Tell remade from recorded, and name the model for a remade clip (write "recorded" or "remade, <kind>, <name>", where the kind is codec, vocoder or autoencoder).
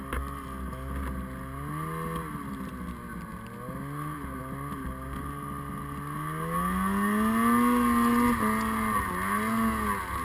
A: recorded